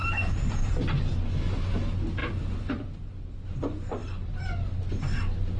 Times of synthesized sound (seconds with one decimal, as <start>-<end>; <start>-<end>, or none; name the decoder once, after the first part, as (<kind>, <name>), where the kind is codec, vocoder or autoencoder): 0.0-1.7 (vocoder, BigVGAN v2); 2.2-3.6; 4.0-4.8

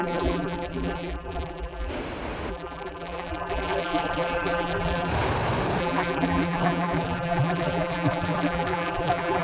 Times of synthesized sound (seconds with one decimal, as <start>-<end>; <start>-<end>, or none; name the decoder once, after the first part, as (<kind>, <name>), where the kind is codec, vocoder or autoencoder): 0.0-1.9 (vocoder, BigVGAN v2); 2.5-5.1; 5.8-9.4

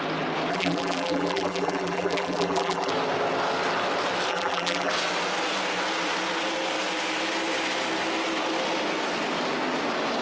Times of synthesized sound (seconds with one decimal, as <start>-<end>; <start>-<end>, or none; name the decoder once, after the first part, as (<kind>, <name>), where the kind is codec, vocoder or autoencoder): 0.5-2.9 (vocoder, BigVGAN v2); 4.3-4.9

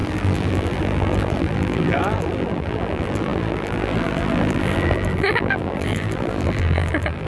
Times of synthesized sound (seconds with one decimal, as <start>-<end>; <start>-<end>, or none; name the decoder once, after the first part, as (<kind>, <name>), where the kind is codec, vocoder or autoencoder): 0.0-7.3 (vocoder, BigVGAN v2)

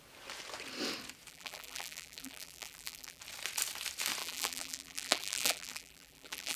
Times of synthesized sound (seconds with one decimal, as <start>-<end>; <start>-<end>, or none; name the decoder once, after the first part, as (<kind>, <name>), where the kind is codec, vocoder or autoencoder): 1.3-3.2 (vocoder, BigVGAN v2); 4.2-6.6

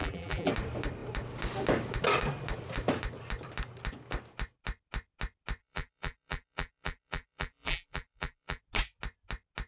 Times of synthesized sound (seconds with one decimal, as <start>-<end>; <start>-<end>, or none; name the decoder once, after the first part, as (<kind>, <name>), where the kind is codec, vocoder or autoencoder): 0.0-0.5 (vocoder, BigVGAN v2); 5.6-8.6